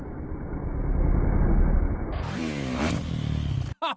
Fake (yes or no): no